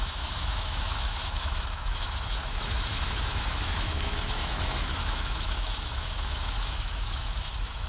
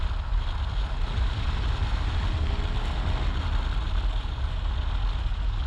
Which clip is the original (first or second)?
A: second